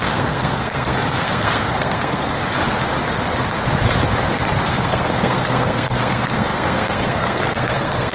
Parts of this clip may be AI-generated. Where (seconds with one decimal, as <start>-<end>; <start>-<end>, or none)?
0.0-2.4; 4.7-8.1